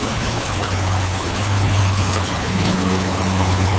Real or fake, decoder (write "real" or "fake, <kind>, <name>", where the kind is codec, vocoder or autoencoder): fake, codec, HILCodec